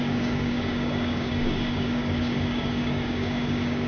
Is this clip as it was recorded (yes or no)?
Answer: no